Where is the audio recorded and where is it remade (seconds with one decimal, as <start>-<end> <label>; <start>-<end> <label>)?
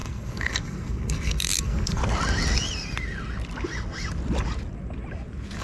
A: 0.0-2.0 remade; 2.0-5.6 recorded